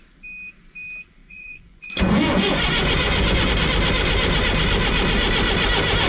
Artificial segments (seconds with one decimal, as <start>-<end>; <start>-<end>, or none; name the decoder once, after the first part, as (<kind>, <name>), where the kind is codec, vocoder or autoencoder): 1.2-3.5 (vocoder, Vocos)